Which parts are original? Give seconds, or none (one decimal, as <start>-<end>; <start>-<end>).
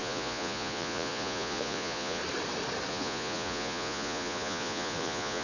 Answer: 2.2-2.9